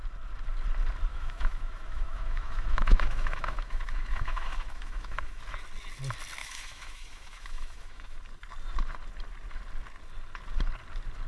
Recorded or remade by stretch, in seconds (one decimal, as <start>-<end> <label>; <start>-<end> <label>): 0.0-1.1 recorded; 1.1-5.4 remade; 5.4-6.4 recorded; 6.4-8.2 remade; 8.2-11.3 recorded